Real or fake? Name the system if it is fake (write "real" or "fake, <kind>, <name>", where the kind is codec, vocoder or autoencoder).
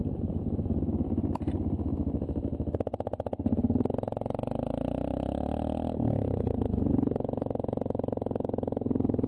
real